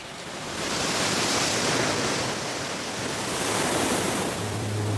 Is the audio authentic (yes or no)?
no